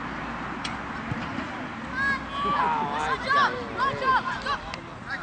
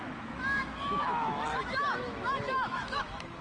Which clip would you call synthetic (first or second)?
second